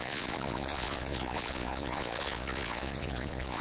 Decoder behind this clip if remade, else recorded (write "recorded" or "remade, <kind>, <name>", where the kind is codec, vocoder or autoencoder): remade, vocoder, Vocos